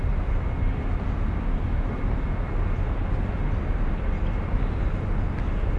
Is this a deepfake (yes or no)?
no